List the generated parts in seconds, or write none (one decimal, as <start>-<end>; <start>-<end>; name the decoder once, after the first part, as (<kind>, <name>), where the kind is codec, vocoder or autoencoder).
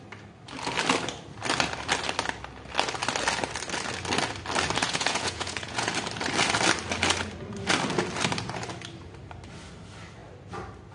4.8-5.9 (vocoder, Vocos)